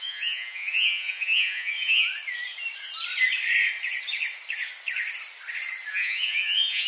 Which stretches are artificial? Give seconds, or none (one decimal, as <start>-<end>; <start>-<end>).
0.0-2.1; 5.9-6.9

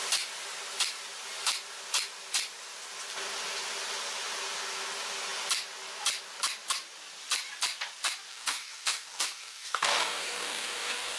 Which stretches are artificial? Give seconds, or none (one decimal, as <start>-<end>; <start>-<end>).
8.3-11.2